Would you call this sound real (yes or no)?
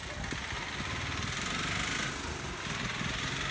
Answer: yes